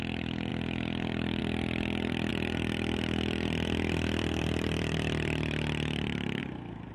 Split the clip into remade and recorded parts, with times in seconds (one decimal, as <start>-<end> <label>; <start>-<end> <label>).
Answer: 0.0-0.5 recorded; 0.5-1.4 remade; 1.4-2.3 recorded; 2.3-6.4 remade; 6.4-6.9 recorded